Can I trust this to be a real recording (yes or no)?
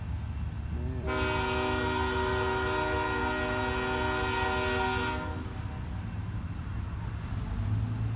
yes